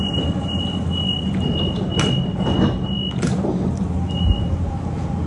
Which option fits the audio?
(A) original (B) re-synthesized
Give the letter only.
A